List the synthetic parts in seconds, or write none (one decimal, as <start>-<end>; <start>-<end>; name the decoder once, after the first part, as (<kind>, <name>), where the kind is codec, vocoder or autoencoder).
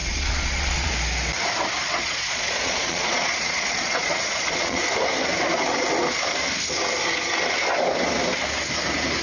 0.0-0.9 (vocoder, Vocos); 1.8-4.8